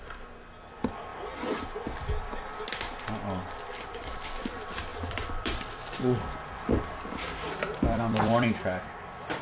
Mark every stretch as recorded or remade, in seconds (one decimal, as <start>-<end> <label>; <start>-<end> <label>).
0.0-1.1 remade; 1.1-3.7 recorded; 3.7-9.4 remade